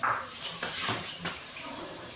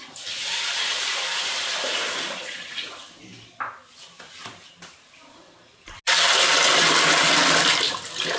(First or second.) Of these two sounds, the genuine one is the second